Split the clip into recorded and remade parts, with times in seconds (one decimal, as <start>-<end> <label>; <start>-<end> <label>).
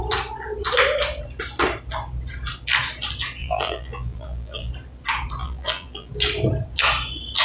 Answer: 0.0-3.4 recorded; 3.4-4.7 remade; 4.7-5.4 recorded; 5.4-6.1 remade; 6.1-7.4 recorded